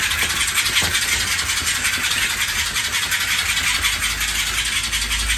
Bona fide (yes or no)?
yes